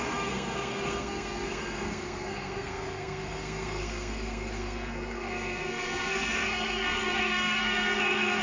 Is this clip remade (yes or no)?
yes